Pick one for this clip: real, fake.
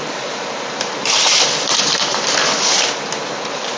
fake